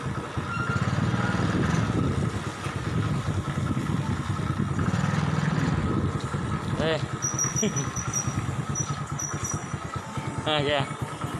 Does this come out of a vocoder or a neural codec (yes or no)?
no